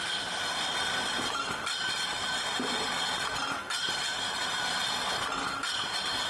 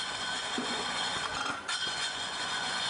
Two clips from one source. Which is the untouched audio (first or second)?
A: first